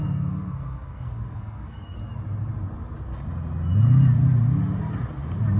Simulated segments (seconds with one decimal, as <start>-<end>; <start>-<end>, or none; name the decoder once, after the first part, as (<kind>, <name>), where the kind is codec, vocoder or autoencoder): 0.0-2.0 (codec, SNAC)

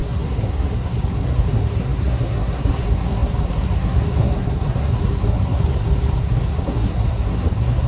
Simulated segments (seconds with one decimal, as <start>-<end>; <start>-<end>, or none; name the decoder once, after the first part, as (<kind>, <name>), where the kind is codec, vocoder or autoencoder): 0.0-7.9 (codec, SNAC)

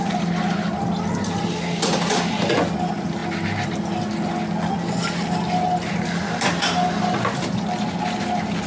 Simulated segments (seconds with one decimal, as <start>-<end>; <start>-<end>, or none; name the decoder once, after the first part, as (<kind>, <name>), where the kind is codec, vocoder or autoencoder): none

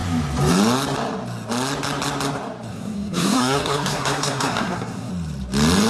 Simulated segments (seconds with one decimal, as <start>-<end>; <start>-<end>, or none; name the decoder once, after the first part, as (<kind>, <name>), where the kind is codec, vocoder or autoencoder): 2.7-5.1 (codec, SNAC)